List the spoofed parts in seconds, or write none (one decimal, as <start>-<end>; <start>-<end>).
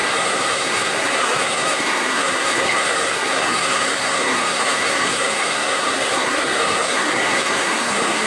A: 0.0-8.3